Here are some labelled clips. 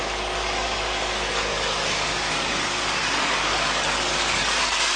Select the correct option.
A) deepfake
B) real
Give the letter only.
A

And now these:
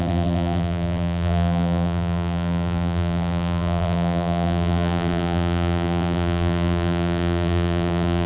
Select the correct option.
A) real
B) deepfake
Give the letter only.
B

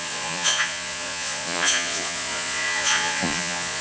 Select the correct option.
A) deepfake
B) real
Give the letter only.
A